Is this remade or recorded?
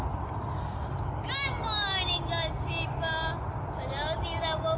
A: recorded